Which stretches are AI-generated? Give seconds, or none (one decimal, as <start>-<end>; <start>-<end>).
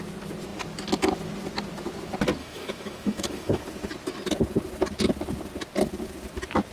2.4-3.6